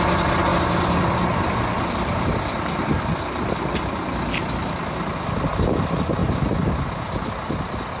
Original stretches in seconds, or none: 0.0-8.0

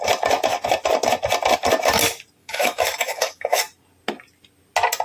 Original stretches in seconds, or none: 0.0-2.4; 3.6-5.0

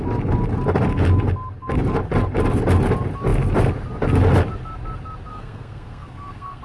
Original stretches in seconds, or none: 0.0-5.3

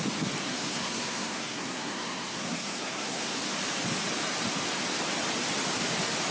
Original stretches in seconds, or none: 0.0-0.4; 3.4-6.3

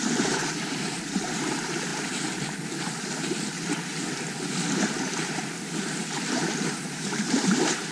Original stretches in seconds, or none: 1.9-3.1; 4.0-4.8

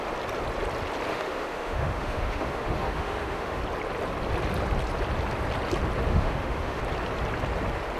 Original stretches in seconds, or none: 0.0-1.1; 3.6-6.1; 6.8-8.0

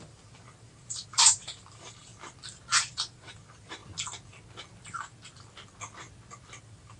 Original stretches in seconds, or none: 2.1-2.8; 3.8-6.6

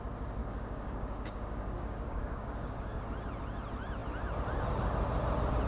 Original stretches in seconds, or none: 0.0-0.4; 3.0-5.7